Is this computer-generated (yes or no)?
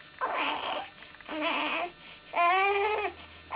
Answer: no